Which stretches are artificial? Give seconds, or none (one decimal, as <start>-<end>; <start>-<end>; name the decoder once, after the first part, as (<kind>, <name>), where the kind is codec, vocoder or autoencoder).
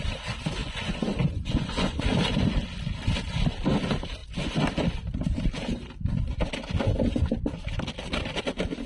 0.6-2.0 (vocoder, Vocos)